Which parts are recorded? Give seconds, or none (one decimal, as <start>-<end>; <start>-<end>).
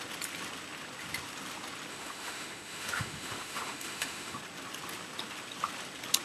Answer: 0.0-1.9; 4.4-6.2